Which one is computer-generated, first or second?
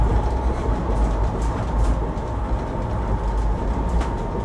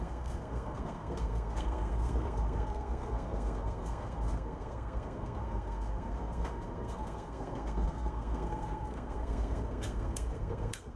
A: second